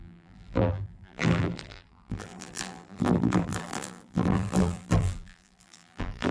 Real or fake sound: fake